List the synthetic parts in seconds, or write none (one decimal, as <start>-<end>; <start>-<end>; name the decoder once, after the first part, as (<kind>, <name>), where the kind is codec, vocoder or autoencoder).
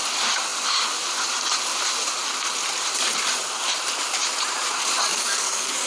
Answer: 5.1-5.9 (codec, DAC)